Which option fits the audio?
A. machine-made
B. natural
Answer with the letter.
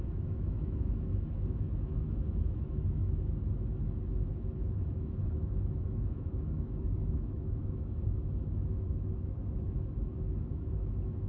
A